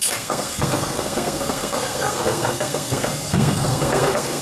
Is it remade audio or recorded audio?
remade